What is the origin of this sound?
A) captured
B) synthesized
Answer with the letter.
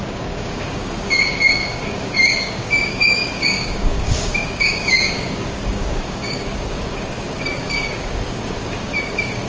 B